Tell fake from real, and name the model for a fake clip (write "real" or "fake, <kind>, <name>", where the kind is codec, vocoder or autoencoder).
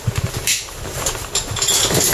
real